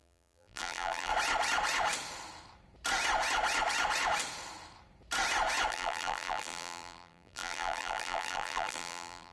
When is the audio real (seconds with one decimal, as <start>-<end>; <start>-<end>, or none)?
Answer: 1.1-5.7